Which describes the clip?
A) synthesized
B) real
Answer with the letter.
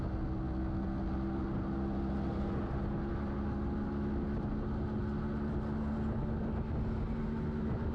B